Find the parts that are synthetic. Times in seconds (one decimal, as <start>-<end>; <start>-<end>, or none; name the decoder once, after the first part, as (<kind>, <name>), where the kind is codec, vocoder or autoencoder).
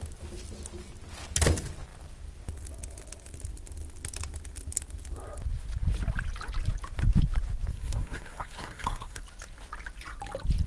7.7-9.2 (codec, SNAC)